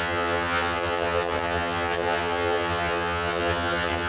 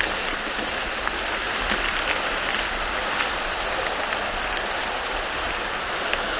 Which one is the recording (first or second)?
second